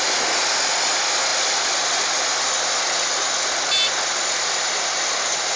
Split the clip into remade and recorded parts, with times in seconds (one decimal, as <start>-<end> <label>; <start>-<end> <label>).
0.0-5.6 recorded